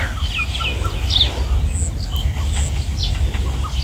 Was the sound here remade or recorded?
recorded